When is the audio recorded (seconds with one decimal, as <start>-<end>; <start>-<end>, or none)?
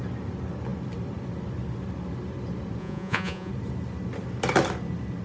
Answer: 0.0-2.8; 3.5-5.2